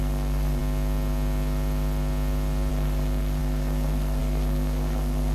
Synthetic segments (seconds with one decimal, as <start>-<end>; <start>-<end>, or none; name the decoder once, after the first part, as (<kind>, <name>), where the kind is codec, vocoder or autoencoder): 0.0-0.6 (codec, SNAC); 2.7-5.3

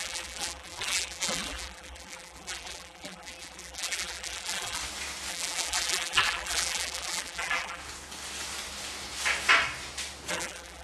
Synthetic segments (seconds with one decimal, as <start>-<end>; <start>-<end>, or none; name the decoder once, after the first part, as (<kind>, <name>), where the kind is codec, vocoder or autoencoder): 0.0-4.8 (vocoder, BigVGAN v2); 5.3-7.8; 10.3-10.8

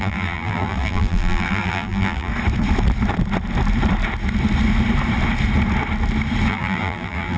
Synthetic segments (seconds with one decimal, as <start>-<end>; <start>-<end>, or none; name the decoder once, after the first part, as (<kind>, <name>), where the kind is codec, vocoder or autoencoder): 0.0-2.3 (vocoder, BigVGAN v2); 6.5-7.4

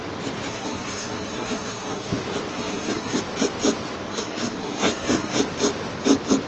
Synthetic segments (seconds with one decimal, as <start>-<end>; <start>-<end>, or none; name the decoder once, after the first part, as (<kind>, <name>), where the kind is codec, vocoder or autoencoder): 0.5-2.1 (codec, SNAC); 2.5-3.2; 4.1-5.4

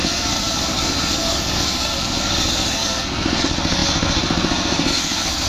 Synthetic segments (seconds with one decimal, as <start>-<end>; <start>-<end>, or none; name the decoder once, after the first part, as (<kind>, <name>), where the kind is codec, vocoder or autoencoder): 0.0-5.5 (codec, SNAC)

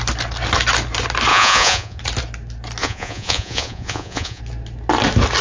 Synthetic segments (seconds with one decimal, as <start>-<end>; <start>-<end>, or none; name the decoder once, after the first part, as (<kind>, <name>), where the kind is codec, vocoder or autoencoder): 1.3-2.0 (vocoder, Vocos); 2.8-4.4

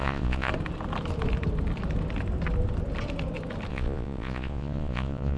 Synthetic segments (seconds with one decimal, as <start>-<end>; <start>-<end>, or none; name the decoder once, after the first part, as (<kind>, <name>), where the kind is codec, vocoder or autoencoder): 0.0-0.5 (vocoder, Vocos); 3.7-5.4

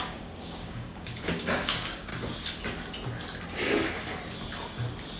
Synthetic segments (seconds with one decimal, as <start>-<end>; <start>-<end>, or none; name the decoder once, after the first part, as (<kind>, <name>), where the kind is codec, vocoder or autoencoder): 0.0-2.1 (codec, DAC)